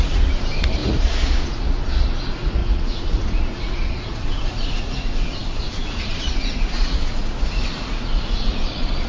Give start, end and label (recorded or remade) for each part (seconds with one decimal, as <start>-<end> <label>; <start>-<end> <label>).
0.0-9.1 remade